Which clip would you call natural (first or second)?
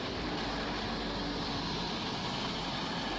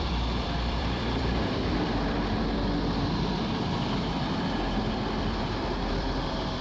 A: first